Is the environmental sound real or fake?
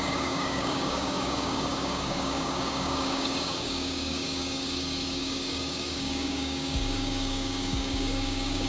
fake